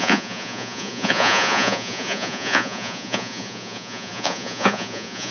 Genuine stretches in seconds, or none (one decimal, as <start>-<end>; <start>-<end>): none